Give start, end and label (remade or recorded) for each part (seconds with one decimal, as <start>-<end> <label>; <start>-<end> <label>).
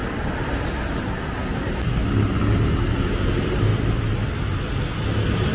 0.0-5.5 recorded